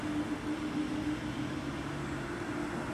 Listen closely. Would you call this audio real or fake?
real